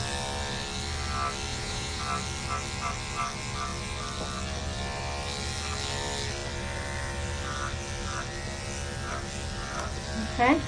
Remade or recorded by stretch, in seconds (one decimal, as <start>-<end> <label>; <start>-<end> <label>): 0.0-1.5 recorded; 1.5-2.0 remade; 2.0-10.7 recorded